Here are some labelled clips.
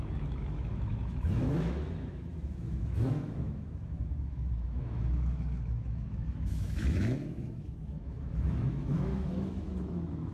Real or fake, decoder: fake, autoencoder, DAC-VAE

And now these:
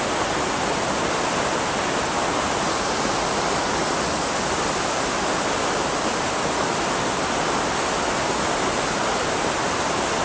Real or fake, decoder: real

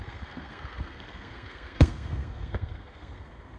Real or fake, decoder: fake, codec, SNAC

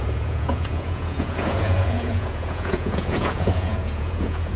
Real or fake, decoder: fake, vocoder, Vocos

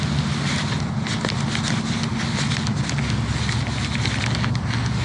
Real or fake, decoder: real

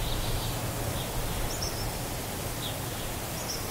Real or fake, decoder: real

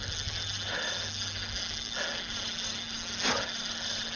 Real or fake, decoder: real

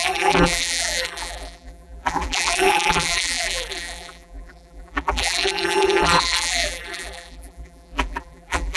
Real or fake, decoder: fake, vocoder, BigVGAN v2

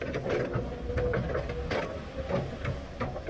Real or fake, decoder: real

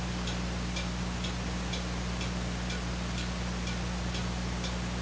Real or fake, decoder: real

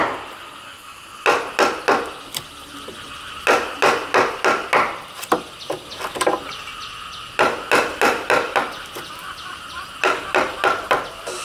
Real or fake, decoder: real